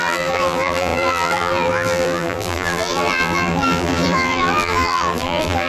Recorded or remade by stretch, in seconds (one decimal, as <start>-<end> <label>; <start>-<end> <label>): 0.0-5.7 remade

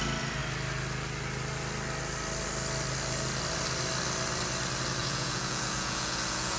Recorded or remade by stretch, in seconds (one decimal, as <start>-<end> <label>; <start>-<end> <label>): 0.0-5.0 recorded; 5.0-6.6 remade

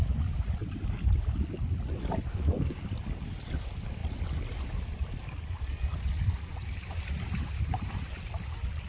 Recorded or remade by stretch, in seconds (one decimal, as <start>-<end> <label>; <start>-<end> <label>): 0.0-2.3 recorded; 2.3-2.8 remade; 2.8-8.9 recorded

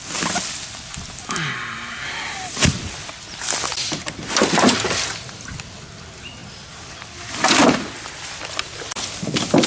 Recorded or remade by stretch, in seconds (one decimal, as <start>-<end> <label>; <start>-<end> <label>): 0.0-9.7 recorded

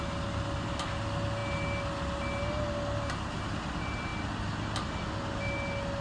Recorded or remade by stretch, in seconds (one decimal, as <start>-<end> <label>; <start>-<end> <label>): 0.0-6.0 recorded

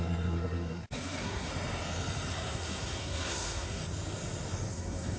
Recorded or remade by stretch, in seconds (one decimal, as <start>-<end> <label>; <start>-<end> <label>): 0.0-1.5 remade; 1.5-2.3 recorded; 2.3-3.8 remade; 3.8-4.7 recorded; 4.7-5.2 remade